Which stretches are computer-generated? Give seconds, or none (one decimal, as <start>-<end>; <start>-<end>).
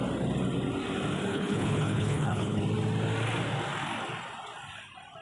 1.3-2.6